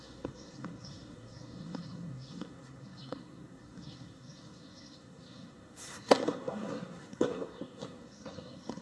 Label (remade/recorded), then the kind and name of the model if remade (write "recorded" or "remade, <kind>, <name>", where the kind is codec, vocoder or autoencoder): remade, codec, SNAC